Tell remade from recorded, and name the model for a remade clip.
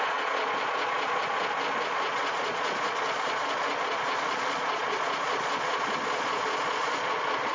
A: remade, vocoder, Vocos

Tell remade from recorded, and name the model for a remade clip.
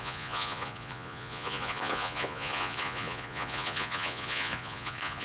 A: remade, vocoder, Vocos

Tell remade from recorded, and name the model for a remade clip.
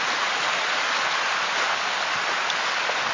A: recorded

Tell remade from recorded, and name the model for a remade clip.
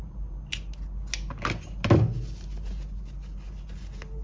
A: recorded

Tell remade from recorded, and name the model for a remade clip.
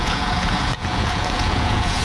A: remade, vocoder, Vocos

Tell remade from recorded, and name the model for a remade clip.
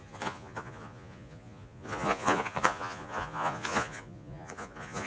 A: remade, vocoder, Vocos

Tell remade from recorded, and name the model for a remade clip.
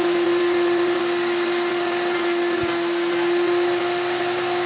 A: recorded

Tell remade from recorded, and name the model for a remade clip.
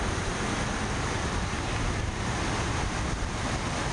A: recorded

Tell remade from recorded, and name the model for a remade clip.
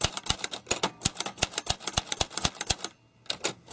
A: recorded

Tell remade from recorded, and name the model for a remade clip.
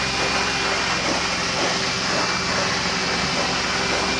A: recorded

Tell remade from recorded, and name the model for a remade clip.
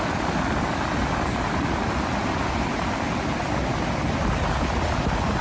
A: recorded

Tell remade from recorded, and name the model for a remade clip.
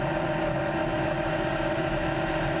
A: recorded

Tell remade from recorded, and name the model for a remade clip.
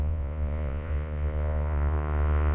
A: remade, vocoder, Vocos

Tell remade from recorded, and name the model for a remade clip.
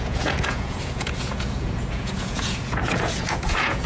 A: remade, vocoder, Vocos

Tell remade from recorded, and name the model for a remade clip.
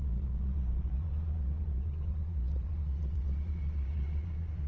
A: remade, vocoder, Vocos